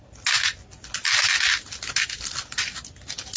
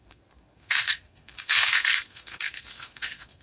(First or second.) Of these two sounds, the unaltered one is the first